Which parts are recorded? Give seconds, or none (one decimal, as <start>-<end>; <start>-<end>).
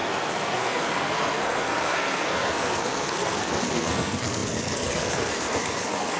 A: none